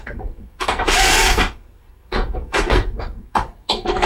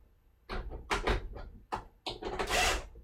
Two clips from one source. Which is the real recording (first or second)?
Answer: second